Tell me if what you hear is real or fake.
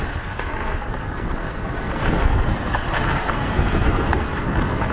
fake